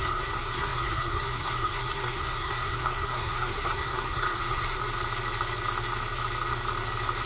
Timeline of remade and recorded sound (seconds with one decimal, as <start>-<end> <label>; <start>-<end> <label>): 0.0-4.8 remade; 4.8-7.3 recorded